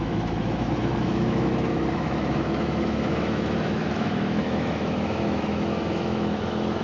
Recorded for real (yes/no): no